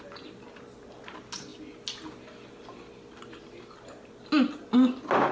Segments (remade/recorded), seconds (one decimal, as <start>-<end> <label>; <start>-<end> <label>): 0.0-5.3 recorded